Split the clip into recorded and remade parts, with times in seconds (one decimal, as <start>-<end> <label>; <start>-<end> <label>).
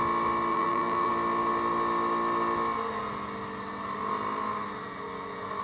0.0-0.5 recorded; 0.5-1.1 remade; 1.1-5.6 recorded